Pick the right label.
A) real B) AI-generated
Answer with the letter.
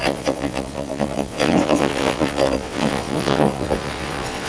B